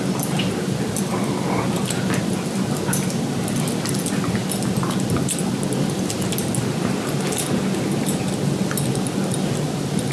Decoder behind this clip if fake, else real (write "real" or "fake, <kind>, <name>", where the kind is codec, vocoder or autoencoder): real